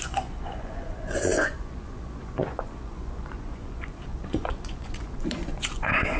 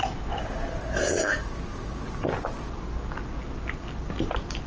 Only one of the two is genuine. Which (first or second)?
second